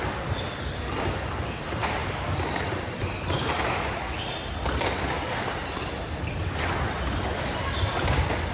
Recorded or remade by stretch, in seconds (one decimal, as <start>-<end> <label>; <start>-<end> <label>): 0.0-8.5 recorded